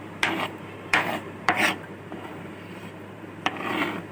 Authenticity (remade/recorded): remade